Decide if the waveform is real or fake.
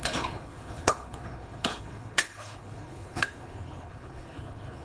fake